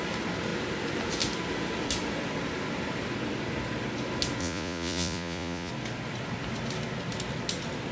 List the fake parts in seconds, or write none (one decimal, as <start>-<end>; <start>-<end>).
4.4-5.7